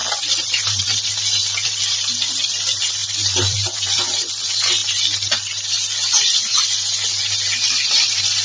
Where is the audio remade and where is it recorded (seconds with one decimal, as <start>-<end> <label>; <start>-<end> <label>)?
0.0-1.8 remade; 1.8-3.0 recorded; 3.0-4.3 remade; 4.3-8.4 recorded

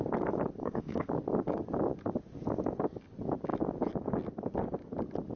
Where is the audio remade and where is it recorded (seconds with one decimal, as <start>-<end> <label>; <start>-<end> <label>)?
0.0-0.6 recorded; 0.6-1.1 remade; 1.1-5.4 recorded